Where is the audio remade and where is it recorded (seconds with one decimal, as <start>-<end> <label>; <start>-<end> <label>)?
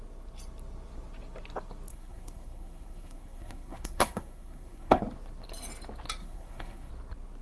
0.0-1.9 recorded; 1.9-5.0 remade; 5.0-6.2 recorded; 6.2-6.9 remade; 6.9-7.4 recorded